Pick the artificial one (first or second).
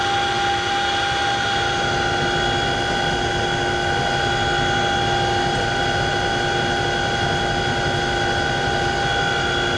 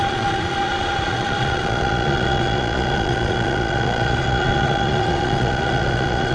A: second